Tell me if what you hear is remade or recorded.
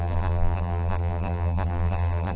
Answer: remade